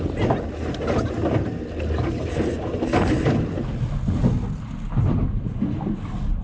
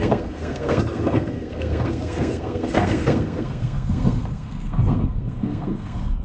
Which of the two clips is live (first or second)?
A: first